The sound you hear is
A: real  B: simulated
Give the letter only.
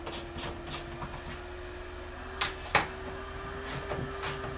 A